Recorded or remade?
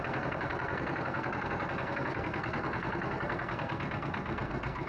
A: remade